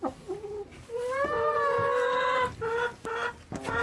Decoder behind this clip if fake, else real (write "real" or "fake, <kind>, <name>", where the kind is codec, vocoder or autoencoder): real